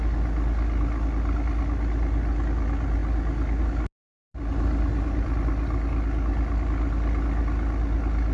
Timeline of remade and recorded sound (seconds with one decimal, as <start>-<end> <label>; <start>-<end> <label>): 0.0-8.3 recorded